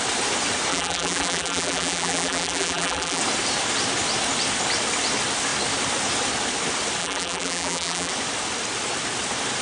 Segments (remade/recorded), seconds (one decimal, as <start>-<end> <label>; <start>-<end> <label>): 0.0-0.7 recorded; 0.7-3.2 remade; 3.2-7.0 recorded; 7.0-8.1 remade; 8.1-9.6 recorded